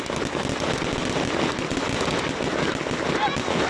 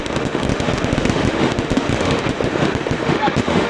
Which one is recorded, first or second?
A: first